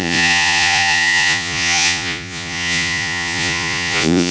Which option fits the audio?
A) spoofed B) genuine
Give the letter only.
A